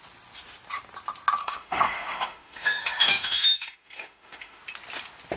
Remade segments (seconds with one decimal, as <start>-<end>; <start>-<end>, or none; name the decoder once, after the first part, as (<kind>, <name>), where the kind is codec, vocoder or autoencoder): 1.4-4.6 (autoencoder, DAC-VAE)